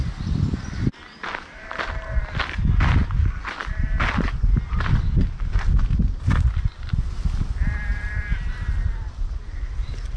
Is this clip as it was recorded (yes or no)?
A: yes